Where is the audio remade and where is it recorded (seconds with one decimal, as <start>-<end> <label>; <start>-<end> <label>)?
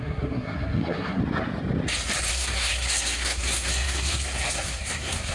0.0-1.2 remade; 1.2-2.3 recorded; 2.3-5.3 remade